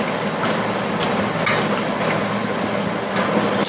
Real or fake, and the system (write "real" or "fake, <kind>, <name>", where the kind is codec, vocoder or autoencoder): real